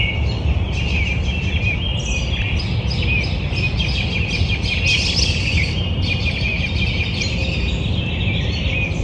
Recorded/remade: recorded